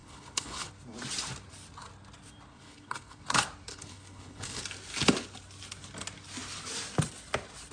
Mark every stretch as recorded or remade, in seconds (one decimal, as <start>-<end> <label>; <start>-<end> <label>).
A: 0.0-0.7 remade; 0.7-2.5 recorded; 2.5-3.2 remade; 3.2-3.7 recorded; 3.7-4.6 remade; 4.6-7.7 recorded